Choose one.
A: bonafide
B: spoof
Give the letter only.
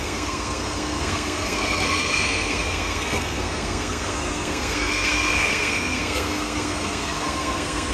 B